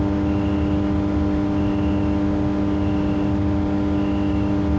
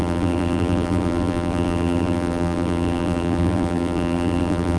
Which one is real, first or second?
first